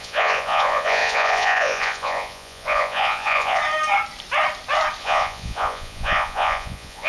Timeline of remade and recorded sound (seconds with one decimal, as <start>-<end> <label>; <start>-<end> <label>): 0.0-3.6 remade; 3.6-5.0 recorded; 5.0-7.1 remade